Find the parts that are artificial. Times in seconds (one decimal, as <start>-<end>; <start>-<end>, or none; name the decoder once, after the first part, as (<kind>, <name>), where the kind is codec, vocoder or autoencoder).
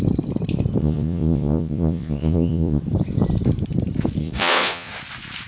0.8-2.8 (vocoder, Vocos); 4.2-4.9